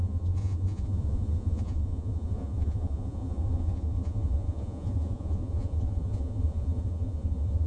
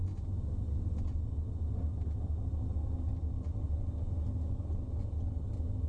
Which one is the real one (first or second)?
second